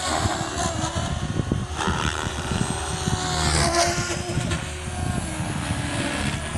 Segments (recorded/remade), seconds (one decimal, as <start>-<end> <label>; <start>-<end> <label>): 0.0-1.6 recorded; 1.6-2.9 remade; 2.9-6.6 recorded